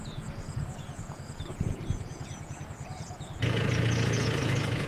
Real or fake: fake